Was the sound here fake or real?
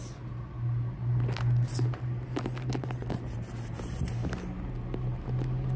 real